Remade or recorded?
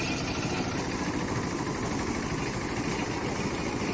recorded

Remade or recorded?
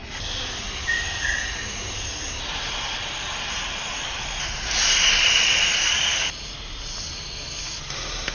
recorded